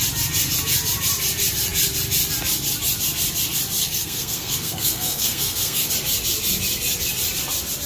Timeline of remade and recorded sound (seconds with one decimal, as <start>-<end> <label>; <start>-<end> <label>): 0.0-3.8 recorded; 3.8-5.9 remade; 5.9-7.9 recorded